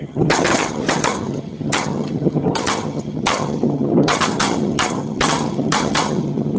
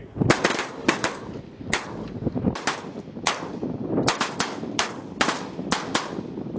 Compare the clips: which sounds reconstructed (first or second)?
first